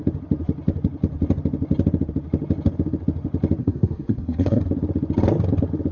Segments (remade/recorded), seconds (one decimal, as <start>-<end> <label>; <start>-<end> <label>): 0.0-3.6 recorded; 3.6-4.6 remade; 4.6-5.9 recorded